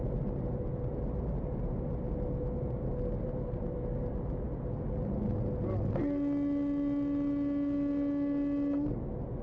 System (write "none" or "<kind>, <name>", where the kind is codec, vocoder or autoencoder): none